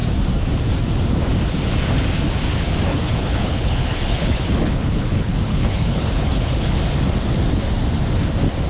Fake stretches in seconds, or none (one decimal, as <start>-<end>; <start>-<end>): 2.9-6.8